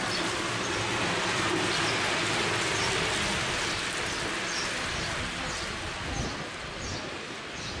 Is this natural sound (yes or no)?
yes